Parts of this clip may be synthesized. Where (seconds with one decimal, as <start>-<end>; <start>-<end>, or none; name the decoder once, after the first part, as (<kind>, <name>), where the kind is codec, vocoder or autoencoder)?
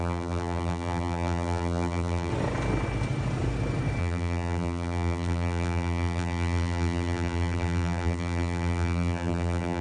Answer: 0.0-2.3 (vocoder, BigVGAN v2); 4.0-9.8